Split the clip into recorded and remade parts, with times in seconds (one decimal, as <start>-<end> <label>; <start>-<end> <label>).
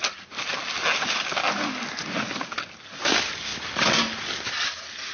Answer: 0.0-0.5 remade; 0.5-5.1 recorded